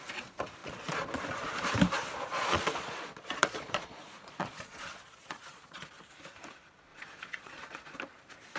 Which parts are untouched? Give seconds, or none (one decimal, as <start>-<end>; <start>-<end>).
0.0-0.6; 1.2-2.3; 5.9-6.9; 8.0-8.6